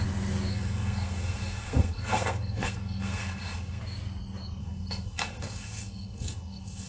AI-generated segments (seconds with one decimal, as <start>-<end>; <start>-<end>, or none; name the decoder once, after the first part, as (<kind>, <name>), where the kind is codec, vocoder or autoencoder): 0.5-3.8 (codec, SNAC); 4.6-6.9